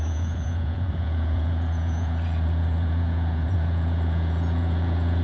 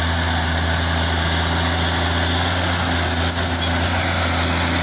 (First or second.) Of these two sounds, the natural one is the second